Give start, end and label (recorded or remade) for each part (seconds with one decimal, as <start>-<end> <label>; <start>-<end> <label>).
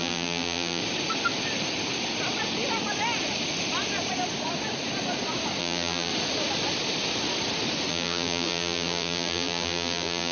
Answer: 0.0-0.8 remade; 0.8-5.6 recorded; 5.6-6.1 remade; 6.1-7.9 recorded; 7.9-10.3 remade